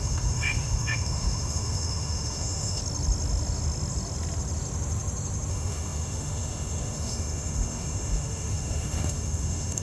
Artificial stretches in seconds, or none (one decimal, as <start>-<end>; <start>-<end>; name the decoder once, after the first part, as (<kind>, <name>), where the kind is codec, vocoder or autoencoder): 0.0-2.8 (autoencoder, DAC-VAE); 5.5-9.8

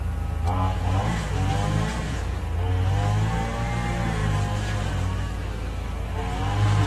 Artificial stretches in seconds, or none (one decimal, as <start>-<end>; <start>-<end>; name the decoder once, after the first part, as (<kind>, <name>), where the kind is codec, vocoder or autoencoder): 0.5-1.2 (vocoder, Vocos); 1.9-2.4

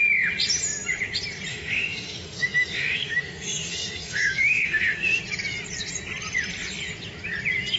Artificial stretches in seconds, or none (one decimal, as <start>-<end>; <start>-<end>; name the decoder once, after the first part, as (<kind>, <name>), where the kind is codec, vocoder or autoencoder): 1.5-5.2 (autoencoder, DAC-VAE)

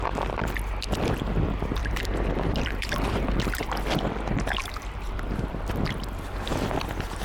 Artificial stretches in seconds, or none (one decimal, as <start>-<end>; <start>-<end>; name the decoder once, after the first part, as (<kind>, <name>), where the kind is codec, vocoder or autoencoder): 1.8-3.7 (vocoder, BigVGAN v2); 4.6-5.6

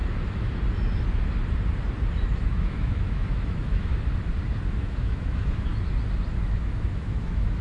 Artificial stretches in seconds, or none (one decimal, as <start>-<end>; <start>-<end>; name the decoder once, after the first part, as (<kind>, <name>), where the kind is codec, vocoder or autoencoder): 2.4-3.9 (autoencoder, DAC-VAE); 4.7-5.7; 6.4-7.6